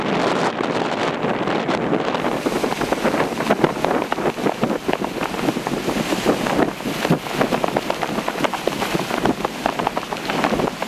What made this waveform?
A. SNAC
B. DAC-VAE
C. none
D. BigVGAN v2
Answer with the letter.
C